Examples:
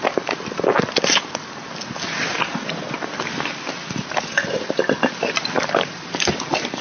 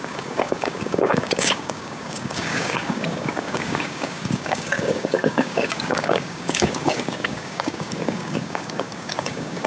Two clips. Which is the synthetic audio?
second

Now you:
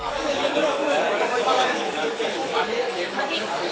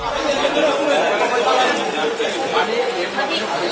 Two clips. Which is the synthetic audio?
first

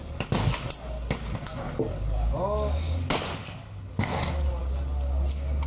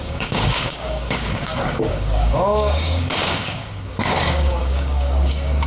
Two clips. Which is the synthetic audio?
second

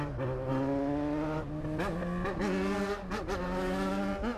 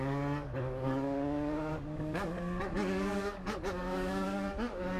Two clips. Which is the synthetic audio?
second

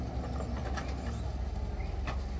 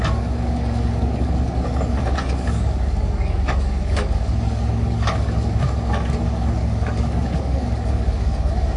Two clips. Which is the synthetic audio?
second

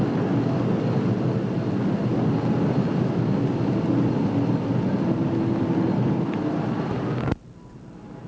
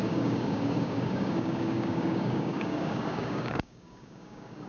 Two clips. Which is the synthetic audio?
second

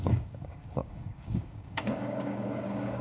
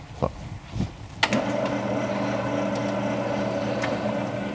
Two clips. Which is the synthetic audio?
first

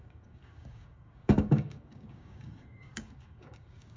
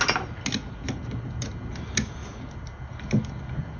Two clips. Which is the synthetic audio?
first